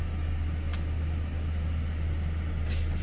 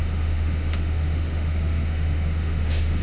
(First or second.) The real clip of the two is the first